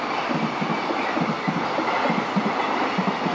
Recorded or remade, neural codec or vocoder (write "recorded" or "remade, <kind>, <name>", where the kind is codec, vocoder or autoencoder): recorded